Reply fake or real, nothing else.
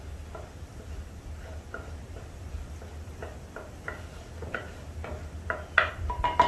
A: real